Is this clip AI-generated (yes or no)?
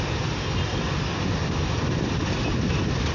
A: no